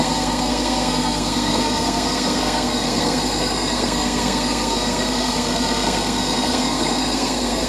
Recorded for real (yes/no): no